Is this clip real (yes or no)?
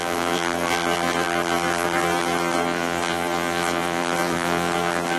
no